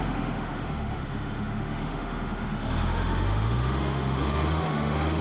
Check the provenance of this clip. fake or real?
fake